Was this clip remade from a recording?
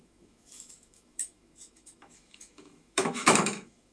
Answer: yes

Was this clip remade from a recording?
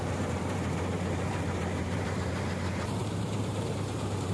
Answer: yes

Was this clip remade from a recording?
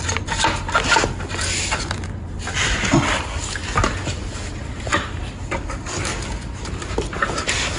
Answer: no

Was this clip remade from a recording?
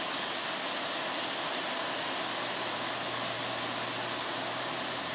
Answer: no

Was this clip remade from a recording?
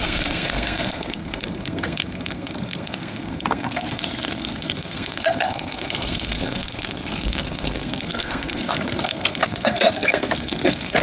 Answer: yes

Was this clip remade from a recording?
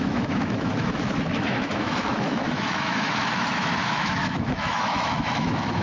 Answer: yes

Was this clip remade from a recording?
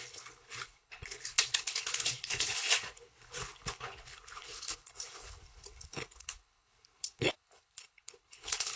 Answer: yes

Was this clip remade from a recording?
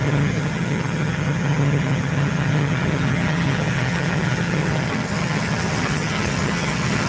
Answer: yes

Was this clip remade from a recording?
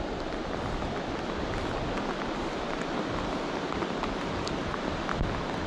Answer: no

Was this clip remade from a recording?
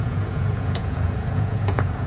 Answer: yes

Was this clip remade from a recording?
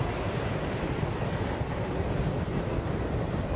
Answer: no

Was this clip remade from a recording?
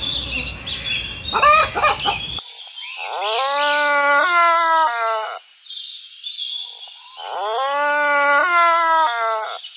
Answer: no